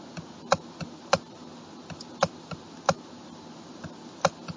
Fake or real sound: real